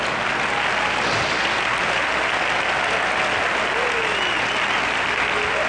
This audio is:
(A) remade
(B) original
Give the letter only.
B